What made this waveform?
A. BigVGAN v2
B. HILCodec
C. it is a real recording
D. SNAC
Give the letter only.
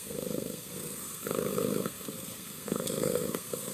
D